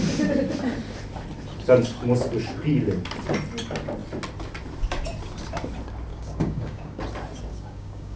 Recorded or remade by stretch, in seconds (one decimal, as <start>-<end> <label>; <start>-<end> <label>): 0.0-6.1 recorded; 6.1-7.0 remade; 7.0-7.5 recorded; 7.5-8.2 remade